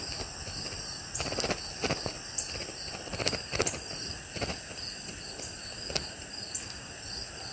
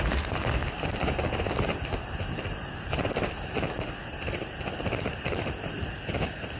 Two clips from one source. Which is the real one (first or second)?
first